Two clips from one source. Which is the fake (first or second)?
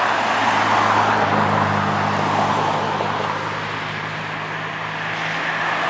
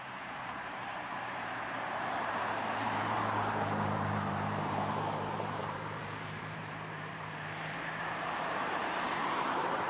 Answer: second